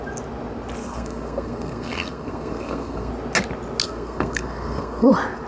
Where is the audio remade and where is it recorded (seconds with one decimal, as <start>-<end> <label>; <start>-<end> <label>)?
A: 0.0-0.8 recorded; 0.8-3.1 remade; 3.1-3.8 recorded; 3.8-5.1 remade; 5.1-5.5 recorded